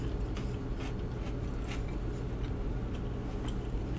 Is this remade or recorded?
recorded